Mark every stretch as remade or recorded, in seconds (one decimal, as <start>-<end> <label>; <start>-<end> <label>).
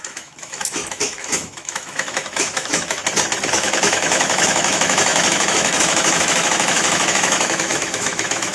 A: 0.0-3.0 remade; 3.0-3.5 recorded; 3.5-8.5 remade